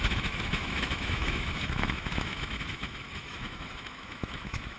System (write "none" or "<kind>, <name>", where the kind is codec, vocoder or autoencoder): autoencoder, DAC-VAE